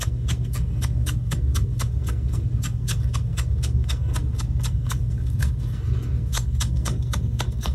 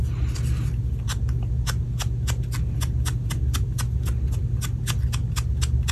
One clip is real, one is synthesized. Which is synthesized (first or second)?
first